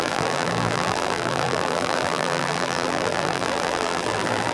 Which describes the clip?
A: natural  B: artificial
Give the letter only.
B